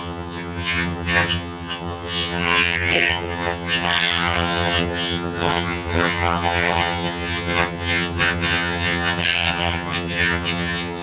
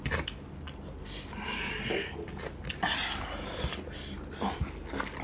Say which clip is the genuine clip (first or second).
second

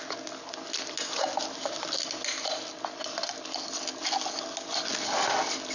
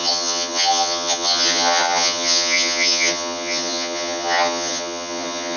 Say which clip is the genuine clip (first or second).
first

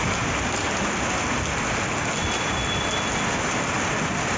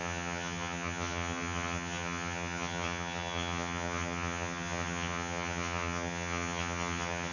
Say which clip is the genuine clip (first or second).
first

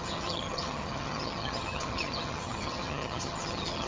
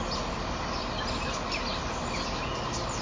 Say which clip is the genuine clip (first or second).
second